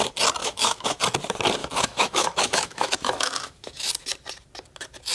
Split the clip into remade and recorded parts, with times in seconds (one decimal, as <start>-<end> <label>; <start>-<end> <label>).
0.0-0.4 recorded; 0.4-1.0 remade; 1.0-1.6 recorded; 1.6-3.9 remade; 3.9-5.1 recorded